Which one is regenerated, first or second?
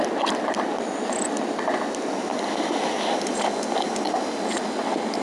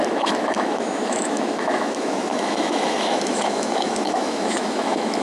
second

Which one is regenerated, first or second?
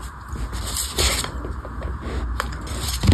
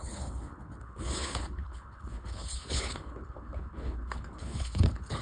second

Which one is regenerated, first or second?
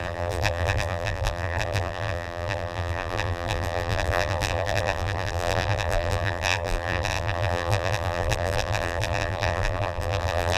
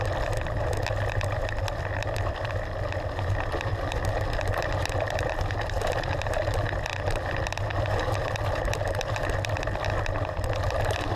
first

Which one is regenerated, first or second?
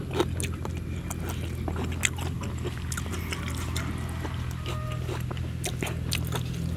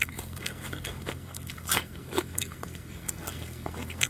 second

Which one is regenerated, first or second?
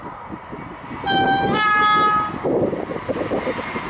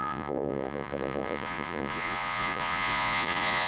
second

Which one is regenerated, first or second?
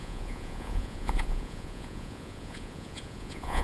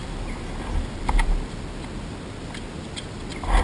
first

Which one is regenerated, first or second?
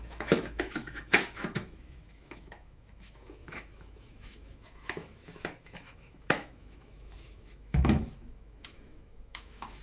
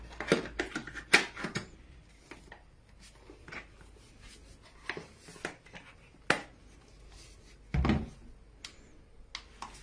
first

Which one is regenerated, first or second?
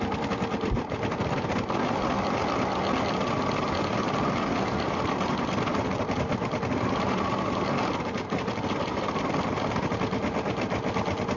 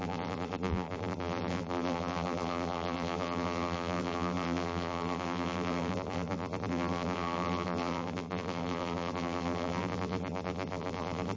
second